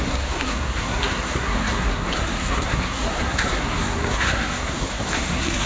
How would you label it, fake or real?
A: fake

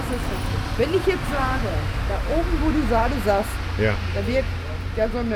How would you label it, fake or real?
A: real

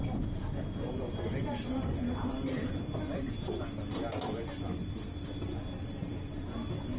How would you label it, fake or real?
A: real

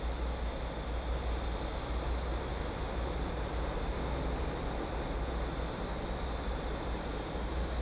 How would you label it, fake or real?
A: real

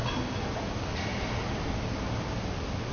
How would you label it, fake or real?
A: real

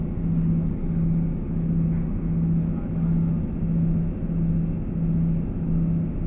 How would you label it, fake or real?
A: real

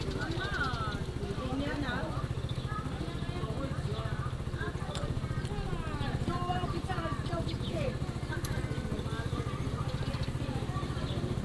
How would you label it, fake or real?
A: real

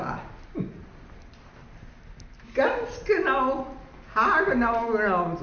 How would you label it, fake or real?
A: real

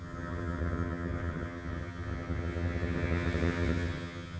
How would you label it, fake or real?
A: fake